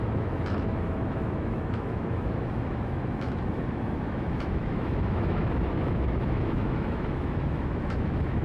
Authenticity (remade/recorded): remade